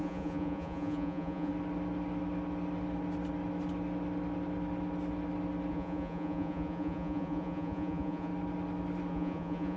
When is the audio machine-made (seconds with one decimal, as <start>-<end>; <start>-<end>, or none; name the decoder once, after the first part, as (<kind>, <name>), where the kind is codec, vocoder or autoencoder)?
0.0-1.5 (vocoder, Vocos); 5.7-8.3; 9.1-9.8